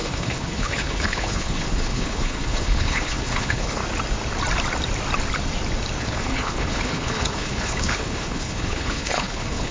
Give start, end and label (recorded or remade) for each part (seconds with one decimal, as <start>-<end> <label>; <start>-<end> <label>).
0.0-3.8 remade; 3.8-6.0 recorded; 6.0-9.7 remade